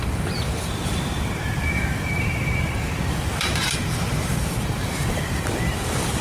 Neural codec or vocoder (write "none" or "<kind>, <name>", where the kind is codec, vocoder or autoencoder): vocoder, BigVGAN v2